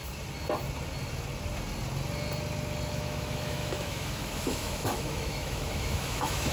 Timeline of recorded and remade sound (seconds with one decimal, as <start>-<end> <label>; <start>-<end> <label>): 0.0-2.9 recorded; 2.9-6.5 remade